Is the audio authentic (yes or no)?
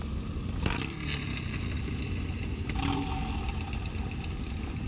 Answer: yes